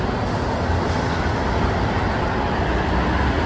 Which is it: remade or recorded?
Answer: recorded